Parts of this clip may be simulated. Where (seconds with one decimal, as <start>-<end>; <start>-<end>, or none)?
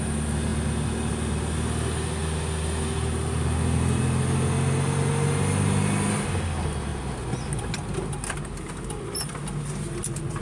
none